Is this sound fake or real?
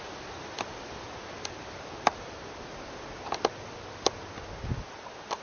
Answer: real